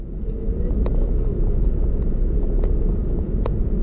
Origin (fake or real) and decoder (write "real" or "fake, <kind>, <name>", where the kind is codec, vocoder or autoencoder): fake, vocoder, Vocos